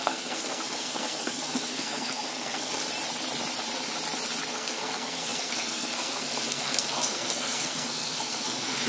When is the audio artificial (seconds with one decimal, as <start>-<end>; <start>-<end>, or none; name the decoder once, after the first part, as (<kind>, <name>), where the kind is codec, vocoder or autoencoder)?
0.0-2.8 (codec, SNAC); 4.5-8.9